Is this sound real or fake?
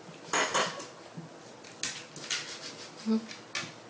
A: real